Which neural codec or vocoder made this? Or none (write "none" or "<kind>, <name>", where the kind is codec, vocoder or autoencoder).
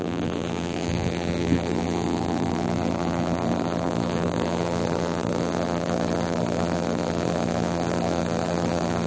vocoder, BigVGAN v2